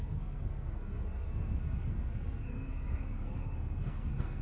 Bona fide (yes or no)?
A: no